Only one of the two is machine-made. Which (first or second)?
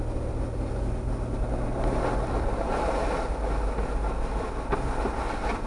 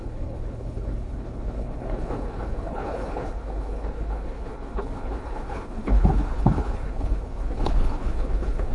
second